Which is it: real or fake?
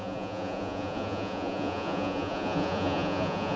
fake